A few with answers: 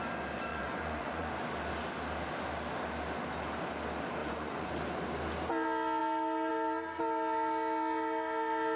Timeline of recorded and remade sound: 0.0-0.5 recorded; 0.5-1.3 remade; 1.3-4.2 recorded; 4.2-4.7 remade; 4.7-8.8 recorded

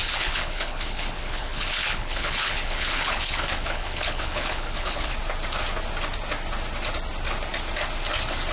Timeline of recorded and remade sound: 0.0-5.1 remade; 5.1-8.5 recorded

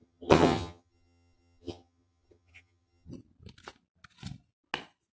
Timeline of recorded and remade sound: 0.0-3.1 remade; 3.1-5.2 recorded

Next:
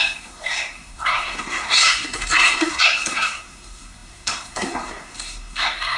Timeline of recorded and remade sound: 0.0-6.0 remade

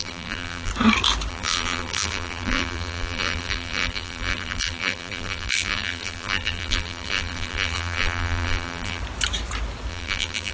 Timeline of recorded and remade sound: 0.0-0.7 remade; 0.7-1.3 recorded; 1.3-9.0 remade; 9.0-9.9 recorded; 9.9-10.5 remade